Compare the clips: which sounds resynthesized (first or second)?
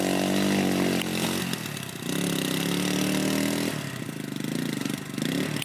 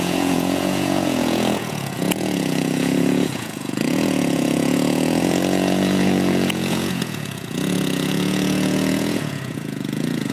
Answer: second